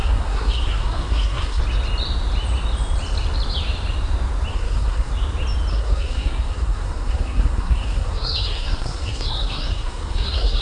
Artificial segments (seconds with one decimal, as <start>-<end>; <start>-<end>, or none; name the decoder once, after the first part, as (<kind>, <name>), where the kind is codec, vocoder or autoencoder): 0.0-1.6 (codec, SNAC); 4.5-5.1; 5.7-10.6